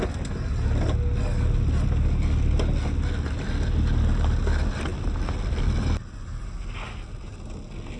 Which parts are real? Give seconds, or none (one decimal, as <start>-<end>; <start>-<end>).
0.0-8.0